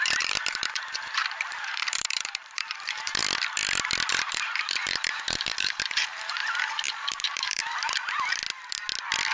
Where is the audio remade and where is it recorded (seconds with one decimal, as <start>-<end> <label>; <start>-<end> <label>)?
0.0-3.2 remade; 3.2-4.1 recorded; 4.1-6.4 remade; 6.4-6.9 recorded; 6.9-7.6 remade; 7.6-9.3 recorded

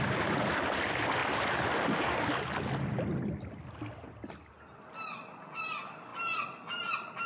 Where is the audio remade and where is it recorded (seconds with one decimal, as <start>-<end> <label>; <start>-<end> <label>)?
0.0-1.2 remade; 1.2-5.6 recorded; 5.6-6.1 remade; 6.1-6.8 recorded; 6.8-7.3 remade

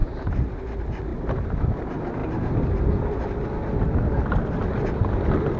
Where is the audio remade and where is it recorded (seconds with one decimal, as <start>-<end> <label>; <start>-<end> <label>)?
0.0-0.6 remade; 0.6-1.1 recorded; 1.1-1.6 remade; 1.6-5.6 recorded